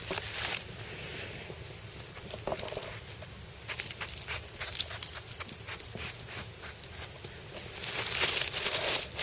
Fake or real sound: real